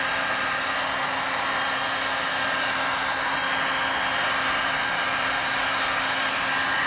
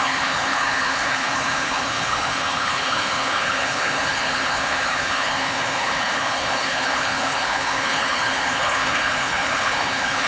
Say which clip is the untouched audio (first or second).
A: first